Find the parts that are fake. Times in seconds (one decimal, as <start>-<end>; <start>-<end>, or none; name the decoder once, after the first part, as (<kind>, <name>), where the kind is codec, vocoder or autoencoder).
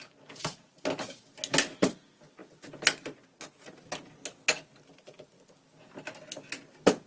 none